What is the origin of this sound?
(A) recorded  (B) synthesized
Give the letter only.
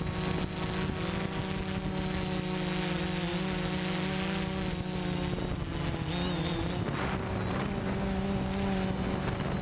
A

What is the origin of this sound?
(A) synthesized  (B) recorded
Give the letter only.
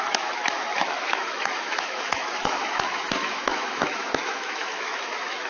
A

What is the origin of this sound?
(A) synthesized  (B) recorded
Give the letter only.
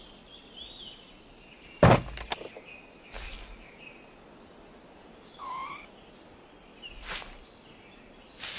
B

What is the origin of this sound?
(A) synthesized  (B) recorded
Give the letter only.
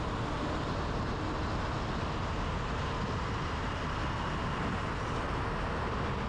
B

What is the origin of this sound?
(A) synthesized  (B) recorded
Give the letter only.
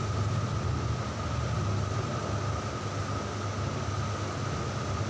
B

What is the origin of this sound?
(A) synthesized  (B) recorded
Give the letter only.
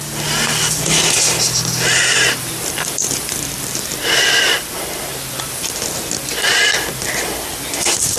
A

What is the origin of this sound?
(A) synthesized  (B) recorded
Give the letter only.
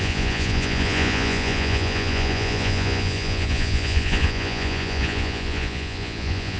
A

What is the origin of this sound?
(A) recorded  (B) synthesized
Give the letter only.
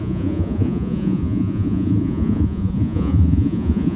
B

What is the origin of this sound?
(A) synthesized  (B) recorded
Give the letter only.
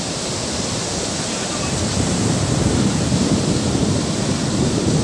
B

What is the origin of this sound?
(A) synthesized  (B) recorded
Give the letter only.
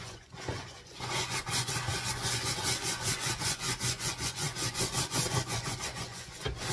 A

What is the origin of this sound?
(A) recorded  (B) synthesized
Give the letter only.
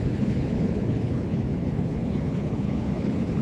B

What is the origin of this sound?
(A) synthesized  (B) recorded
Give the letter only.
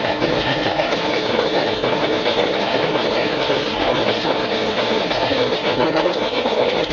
A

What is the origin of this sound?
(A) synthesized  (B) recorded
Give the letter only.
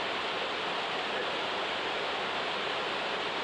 B